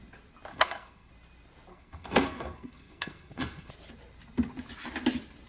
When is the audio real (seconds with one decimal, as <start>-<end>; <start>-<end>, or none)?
0.0-0.5; 1.1-1.7; 3.7-5.5